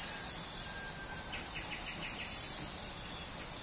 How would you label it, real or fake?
real